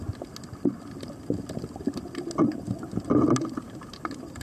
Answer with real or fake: real